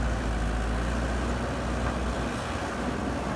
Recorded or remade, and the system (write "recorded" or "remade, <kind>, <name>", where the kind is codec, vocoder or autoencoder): recorded